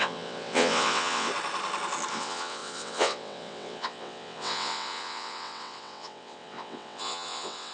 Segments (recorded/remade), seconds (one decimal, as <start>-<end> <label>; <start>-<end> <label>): 0.0-1.3 remade; 1.3-2.1 recorded; 2.1-7.7 remade